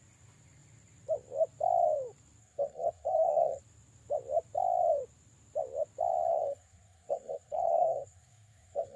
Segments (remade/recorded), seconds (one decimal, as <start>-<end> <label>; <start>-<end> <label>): 0.0-2.4 recorded; 2.4-3.6 remade; 3.6-6.3 recorded; 6.3-9.0 remade